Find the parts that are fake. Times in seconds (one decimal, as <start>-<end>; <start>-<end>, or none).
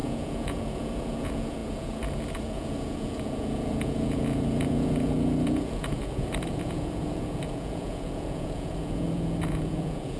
0.0-10.2